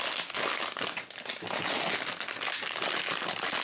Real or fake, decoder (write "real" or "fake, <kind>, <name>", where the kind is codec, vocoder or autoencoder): real